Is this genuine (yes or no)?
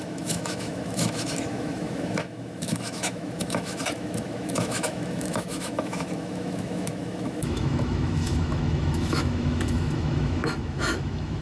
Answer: no